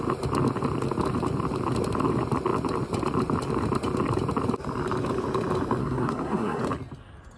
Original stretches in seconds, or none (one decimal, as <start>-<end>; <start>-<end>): 0.0-5.8; 6.6-7.4